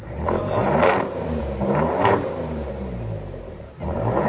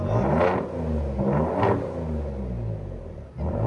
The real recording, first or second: second